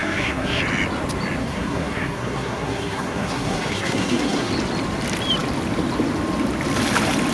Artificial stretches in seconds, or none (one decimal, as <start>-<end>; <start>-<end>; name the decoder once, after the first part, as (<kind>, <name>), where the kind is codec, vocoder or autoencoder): 0.0-0.6 (codec, SNAC); 1.4-4.5